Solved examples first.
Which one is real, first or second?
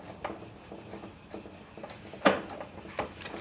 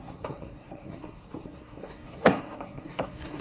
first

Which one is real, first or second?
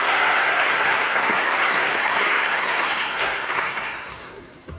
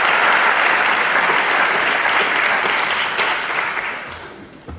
second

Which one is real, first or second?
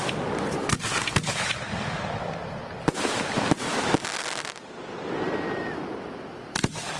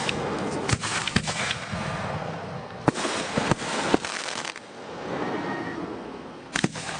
first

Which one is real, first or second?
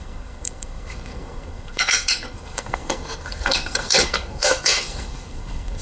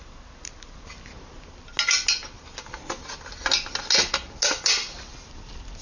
second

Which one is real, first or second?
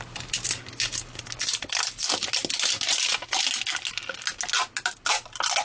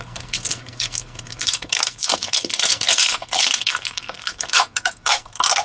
first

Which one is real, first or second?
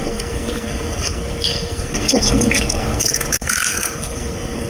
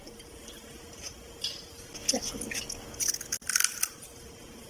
second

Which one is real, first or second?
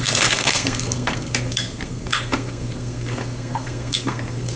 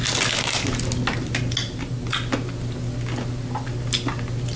second